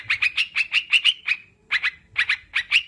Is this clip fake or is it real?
real